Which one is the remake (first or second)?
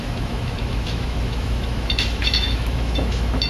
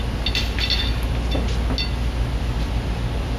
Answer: first